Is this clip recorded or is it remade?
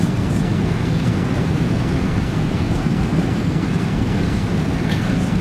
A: remade